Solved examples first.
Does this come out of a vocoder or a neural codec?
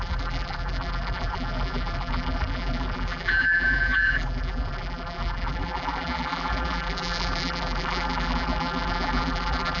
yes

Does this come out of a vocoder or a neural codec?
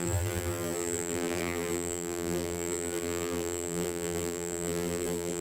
yes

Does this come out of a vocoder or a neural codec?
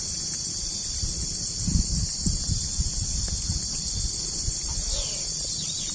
no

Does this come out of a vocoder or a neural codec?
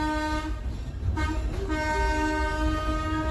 no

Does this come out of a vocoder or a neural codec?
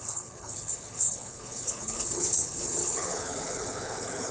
yes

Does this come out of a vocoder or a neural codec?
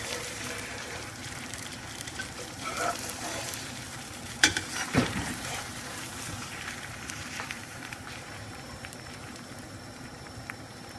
yes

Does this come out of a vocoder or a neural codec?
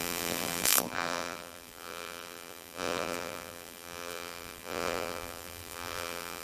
yes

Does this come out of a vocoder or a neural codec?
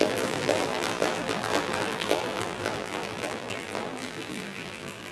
yes